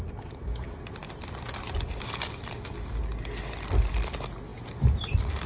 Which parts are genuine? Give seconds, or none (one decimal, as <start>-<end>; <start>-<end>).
0.0-5.5